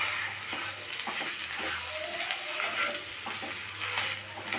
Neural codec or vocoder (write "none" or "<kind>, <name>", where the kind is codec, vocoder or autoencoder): none